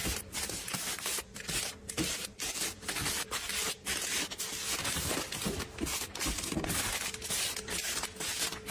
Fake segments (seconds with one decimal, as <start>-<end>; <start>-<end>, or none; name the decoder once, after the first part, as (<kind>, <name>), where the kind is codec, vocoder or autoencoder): 0.0-4.9 (vocoder, BigVGAN v2)